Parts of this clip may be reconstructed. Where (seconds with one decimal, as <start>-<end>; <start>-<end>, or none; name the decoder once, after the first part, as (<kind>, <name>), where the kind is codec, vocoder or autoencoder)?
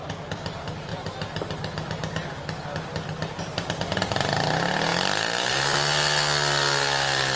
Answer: none